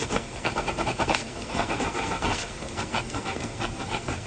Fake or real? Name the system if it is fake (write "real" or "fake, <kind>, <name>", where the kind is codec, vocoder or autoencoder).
fake, codec, SNAC